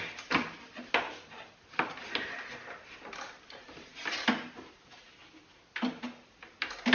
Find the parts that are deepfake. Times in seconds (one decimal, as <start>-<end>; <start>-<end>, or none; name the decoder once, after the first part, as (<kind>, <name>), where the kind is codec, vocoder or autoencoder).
none

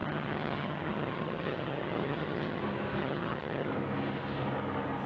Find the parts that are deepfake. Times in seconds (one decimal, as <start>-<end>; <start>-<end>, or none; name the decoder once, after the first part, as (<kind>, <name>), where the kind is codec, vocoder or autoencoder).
0.0-2.6 (vocoder, HiFi-GAN); 3.0-3.7

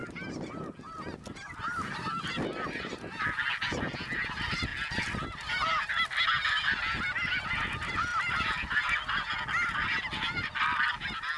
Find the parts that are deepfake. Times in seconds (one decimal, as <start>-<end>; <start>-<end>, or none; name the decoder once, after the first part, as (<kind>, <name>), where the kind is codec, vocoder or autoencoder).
none